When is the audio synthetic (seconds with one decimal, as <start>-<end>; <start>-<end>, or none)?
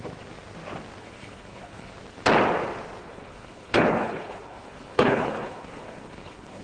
1.0-1.9; 3.0-6.6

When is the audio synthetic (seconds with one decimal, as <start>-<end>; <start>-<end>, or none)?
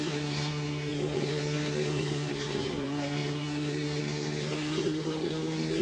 0.0-5.8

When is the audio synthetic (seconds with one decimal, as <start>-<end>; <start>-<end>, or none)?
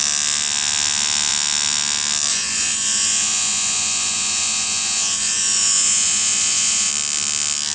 2.3-6.9